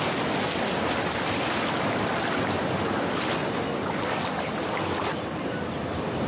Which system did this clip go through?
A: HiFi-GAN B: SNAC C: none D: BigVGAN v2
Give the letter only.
C